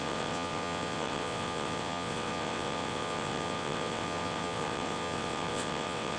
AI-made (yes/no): yes